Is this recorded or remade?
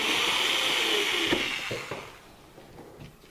recorded